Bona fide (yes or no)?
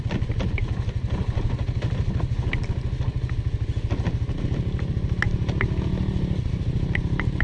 yes